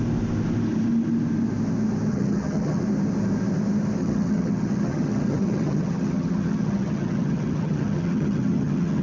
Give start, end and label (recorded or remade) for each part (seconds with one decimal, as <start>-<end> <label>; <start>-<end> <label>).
0.0-2.1 recorded; 2.1-2.8 remade; 2.8-4.0 recorded; 4.0-9.0 remade